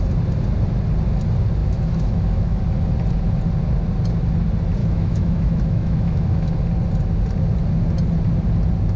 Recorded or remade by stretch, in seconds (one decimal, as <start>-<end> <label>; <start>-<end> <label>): 0.0-1.6 recorded; 1.6-2.6 remade; 2.6-4.8 recorded; 4.8-6.5 remade; 6.5-9.0 recorded